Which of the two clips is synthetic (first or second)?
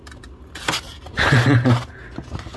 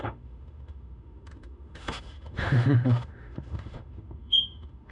second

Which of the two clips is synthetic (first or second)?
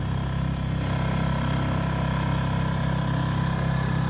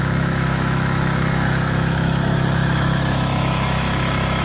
second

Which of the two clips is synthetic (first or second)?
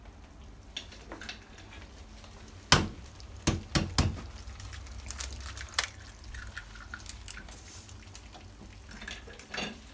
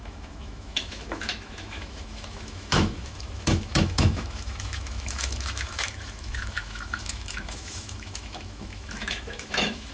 second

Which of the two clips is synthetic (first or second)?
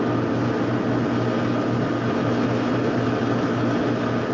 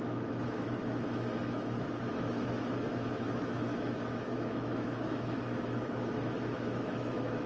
second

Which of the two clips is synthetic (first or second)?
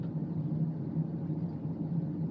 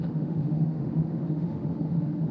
second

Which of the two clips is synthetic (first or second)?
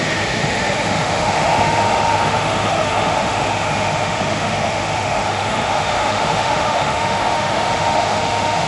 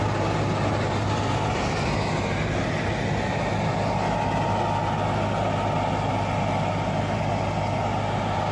first